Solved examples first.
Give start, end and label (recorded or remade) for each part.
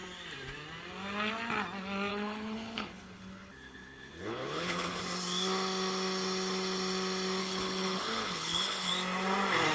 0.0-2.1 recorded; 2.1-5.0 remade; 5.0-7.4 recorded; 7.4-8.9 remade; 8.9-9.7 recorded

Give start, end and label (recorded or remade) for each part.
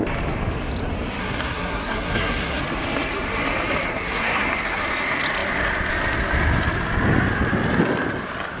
0.0-1.2 recorded; 1.2-2.6 remade; 2.6-3.9 recorded; 3.9-4.8 remade; 4.8-8.6 recorded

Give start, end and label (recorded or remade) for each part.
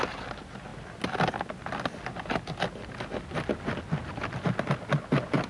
0.0-5.5 recorded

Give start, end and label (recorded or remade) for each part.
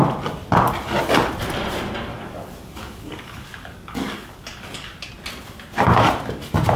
0.0-2.1 recorded; 2.1-5.1 remade; 5.1-6.8 recorded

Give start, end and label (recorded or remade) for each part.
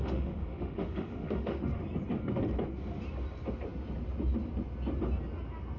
0.0-1.8 remade; 1.8-5.8 recorded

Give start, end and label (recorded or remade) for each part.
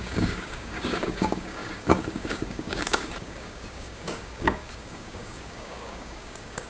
0.0-6.7 remade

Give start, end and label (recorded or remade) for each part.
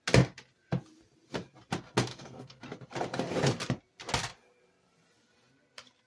0.0-2.1 recorded; 2.1-2.6 remade; 2.6-6.1 recorded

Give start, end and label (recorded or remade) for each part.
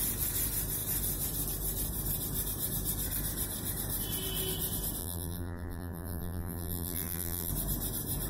0.0-5.0 recorded; 5.0-7.5 remade; 7.5-8.3 recorded